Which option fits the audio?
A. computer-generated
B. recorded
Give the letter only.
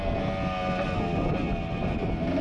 B